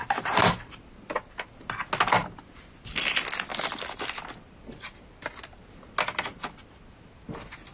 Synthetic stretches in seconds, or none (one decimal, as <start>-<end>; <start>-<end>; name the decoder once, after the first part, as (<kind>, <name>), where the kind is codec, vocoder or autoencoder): 0.0-0.7 (vocoder, BigVGAN v2)